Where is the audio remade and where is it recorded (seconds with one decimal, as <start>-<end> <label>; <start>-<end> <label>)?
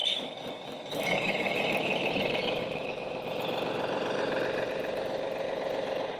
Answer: 0.0-1.6 remade; 1.6-2.6 recorded; 2.6-3.2 remade; 3.2-6.2 recorded